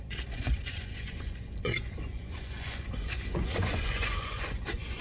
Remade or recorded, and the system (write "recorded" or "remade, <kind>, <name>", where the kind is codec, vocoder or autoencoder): remade, vocoder, Vocos